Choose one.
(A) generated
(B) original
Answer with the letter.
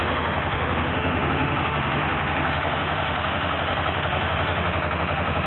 A